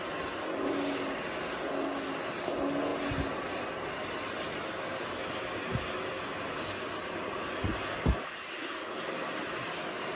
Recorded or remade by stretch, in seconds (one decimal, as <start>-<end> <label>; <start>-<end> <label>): 0.0-10.2 recorded